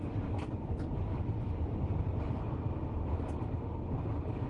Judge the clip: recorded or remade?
recorded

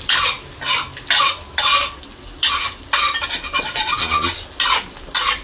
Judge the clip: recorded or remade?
recorded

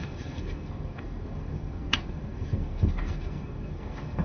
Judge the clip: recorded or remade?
remade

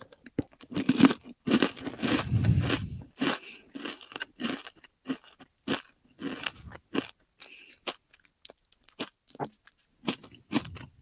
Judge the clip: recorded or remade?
recorded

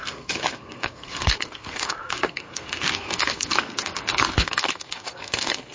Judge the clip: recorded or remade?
remade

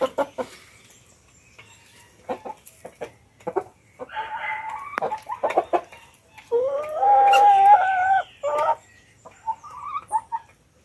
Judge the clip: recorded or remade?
recorded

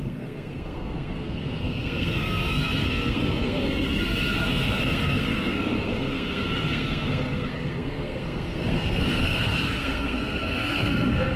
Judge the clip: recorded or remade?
remade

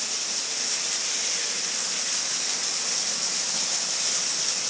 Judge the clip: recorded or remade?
recorded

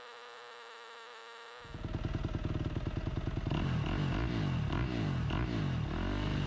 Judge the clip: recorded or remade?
recorded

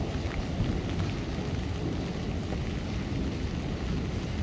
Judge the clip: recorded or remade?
recorded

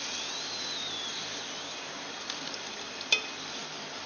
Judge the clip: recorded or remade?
recorded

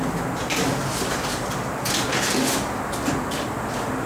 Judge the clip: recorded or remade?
recorded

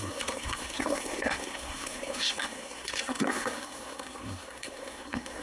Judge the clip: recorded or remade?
remade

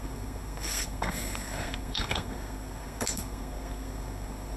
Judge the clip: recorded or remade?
remade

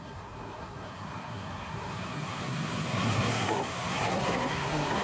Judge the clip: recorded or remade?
remade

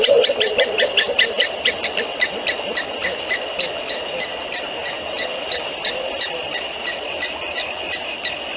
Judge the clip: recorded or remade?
recorded